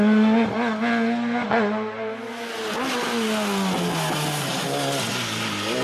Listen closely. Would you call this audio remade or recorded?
recorded